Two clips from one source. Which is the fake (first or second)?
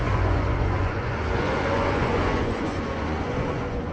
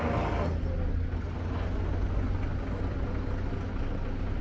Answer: first